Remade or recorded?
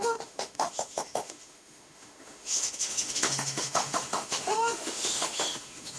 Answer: remade